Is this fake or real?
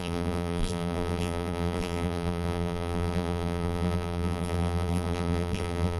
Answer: fake